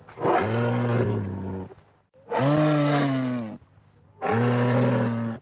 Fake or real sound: real